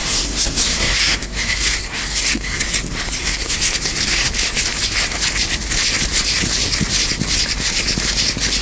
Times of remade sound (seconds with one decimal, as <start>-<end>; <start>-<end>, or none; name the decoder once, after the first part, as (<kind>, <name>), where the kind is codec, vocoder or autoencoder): 0.0-2.6 (codec, SNAC); 3.2-4.3